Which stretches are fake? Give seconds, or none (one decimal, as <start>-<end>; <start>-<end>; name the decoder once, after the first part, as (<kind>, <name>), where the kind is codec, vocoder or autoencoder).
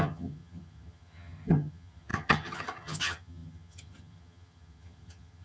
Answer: 0.0-5.4 (vocoder, HiFi-GAN)